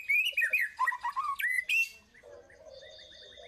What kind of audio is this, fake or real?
real